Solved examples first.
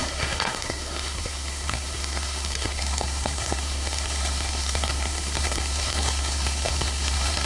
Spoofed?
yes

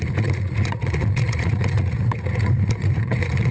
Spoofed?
yes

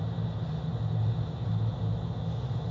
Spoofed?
no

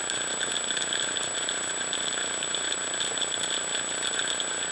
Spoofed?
no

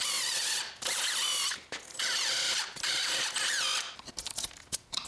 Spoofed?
no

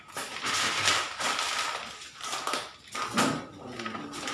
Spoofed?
no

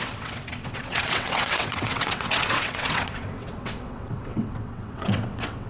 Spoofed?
yes